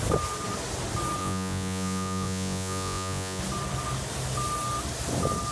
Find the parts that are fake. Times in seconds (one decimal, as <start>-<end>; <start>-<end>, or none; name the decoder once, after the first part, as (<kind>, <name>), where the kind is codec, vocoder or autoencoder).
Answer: 1.2-3.4 (vocoder, Vocos)